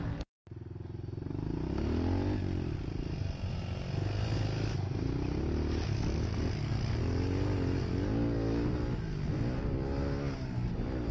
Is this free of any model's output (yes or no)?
yes